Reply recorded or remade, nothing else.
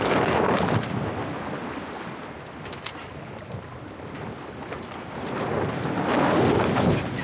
recorded